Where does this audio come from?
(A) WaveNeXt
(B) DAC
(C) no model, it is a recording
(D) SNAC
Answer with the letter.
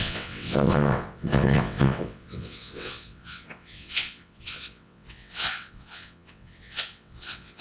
A